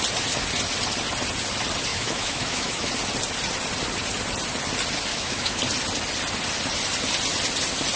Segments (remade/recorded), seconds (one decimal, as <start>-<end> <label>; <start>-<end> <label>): 0.0-1.9 recorded; 1.9-2.9 remade; 2.9-5.1 recorded; 5.1-5.6 remade; 5.6-8.0 recorded